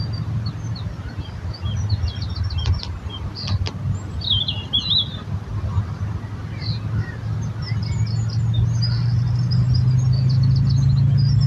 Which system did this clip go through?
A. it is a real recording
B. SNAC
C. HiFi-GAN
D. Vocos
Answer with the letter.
A